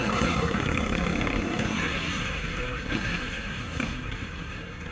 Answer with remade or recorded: remade